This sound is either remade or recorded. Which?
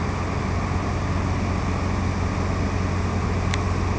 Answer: recorded